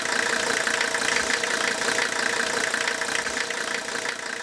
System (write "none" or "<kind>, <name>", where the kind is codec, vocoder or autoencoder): none